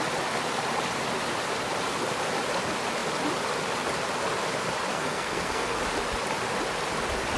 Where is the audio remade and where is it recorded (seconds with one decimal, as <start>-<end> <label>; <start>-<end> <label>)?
0.0-4.9 recorded; 4.9-5.8 remade; 5.8-7.4 recorded